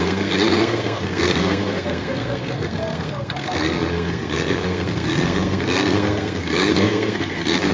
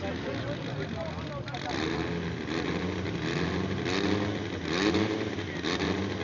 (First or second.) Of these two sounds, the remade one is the first